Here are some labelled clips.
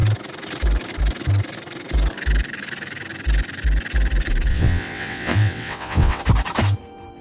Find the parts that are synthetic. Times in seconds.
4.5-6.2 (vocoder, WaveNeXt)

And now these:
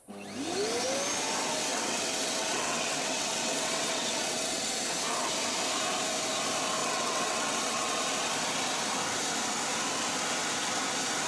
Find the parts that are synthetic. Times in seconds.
1.7-4.7 (vocoder, WaveNeXt); 6.8-8.0